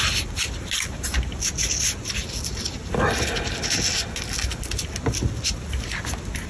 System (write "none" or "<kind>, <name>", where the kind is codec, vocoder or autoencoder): none